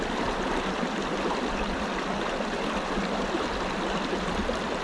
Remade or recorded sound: recorded